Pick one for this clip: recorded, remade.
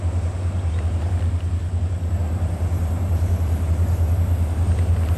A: recorded